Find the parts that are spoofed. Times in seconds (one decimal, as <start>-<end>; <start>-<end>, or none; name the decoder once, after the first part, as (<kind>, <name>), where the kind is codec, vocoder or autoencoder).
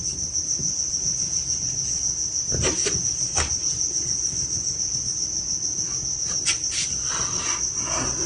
none